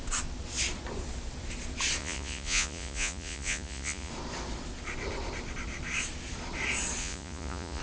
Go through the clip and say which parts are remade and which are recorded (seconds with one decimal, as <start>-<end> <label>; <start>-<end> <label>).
0.0-2.0 recorded; 2.0-4.1 remade; 4.1-7.0 recorded; 7.0-7.8 remade